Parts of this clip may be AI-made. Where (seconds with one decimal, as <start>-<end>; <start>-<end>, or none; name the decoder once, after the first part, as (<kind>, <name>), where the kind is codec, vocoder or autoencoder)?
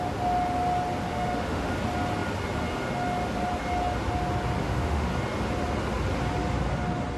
1.1-1.7 (autoencoder, DAC-VAE); 4.6-5.1